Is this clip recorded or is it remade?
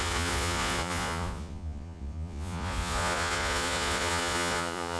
remade